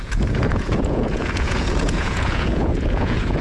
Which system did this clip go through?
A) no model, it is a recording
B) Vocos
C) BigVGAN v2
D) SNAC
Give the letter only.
B